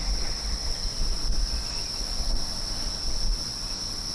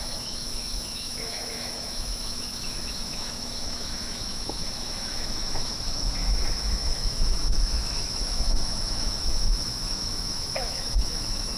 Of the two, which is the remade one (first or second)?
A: second